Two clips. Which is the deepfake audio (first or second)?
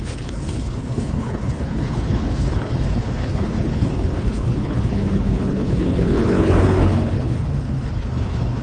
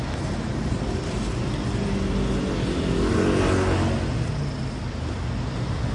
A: first